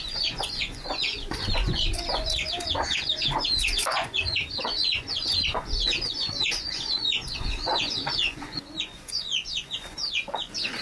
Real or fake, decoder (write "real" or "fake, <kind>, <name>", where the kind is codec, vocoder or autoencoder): fake, vocoder, Vocos